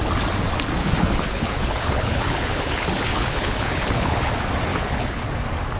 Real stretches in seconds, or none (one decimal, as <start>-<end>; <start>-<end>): 0.0-0.8; 4.3-4.7; 5.3-5.8